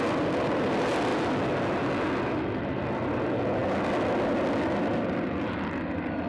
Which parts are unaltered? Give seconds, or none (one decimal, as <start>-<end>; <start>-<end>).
0.0-6.3